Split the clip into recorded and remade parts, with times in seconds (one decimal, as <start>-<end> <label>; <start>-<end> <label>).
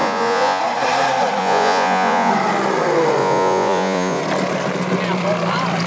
0.0-0.6 remade; 0.6-1.4 recorded; 1.4-2.3 remade; 2.3-3.2 recorded; 3.2-4.2 remade; 4.2-5.9 recorded